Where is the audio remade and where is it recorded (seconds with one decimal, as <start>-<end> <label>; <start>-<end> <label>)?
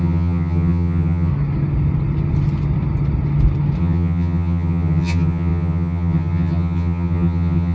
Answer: 0.0-1.3 remade; 1.3-3.8 recorded; 3.8-7.7 remade